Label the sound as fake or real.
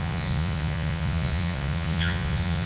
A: fake